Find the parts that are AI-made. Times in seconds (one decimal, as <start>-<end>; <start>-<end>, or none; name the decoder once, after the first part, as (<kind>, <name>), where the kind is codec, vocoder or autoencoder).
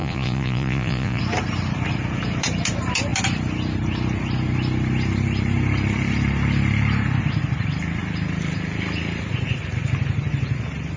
0.0-1.2 (vocoder, Vocos)